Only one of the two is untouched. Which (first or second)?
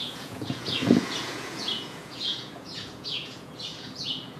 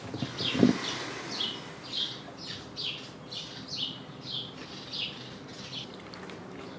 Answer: second